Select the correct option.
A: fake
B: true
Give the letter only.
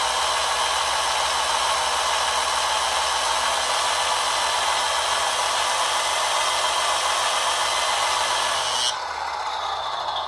B